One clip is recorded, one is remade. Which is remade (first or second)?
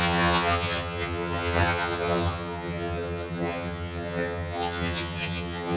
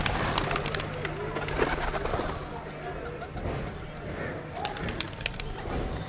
first